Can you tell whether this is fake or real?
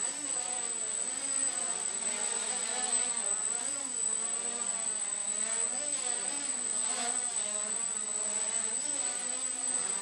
real